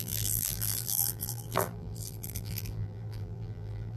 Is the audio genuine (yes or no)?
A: no